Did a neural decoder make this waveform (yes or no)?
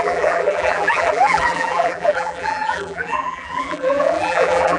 yes